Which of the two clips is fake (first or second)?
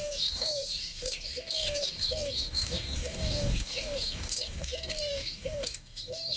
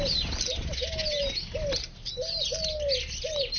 first